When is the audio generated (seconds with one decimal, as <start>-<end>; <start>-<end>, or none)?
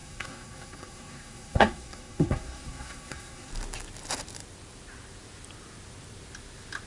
0.0-3.5